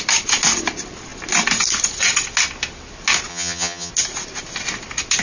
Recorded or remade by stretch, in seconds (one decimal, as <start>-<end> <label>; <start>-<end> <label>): 0.0-3.3 recorded; 3.3-3.9 remade; 3.9-5.2 recorded